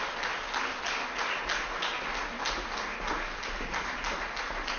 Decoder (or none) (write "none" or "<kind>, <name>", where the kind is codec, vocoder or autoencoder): vocoder, BigVGAN v2